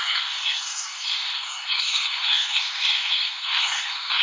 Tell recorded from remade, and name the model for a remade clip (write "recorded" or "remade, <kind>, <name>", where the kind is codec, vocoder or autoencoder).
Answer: remade, codec, SNAC